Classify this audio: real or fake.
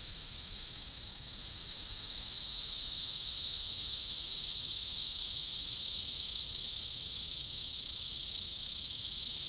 fake